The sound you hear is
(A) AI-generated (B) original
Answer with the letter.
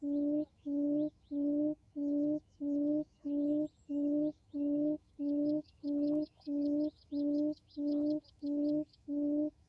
A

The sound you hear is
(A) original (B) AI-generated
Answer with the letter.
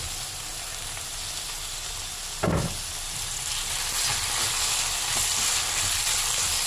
A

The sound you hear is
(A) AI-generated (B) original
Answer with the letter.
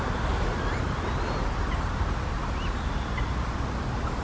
B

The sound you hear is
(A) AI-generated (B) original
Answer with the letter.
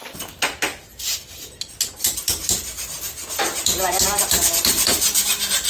B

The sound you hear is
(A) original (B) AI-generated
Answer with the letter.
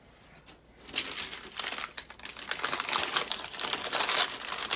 A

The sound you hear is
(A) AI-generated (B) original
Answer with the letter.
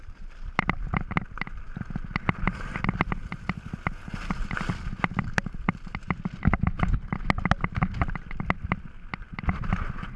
B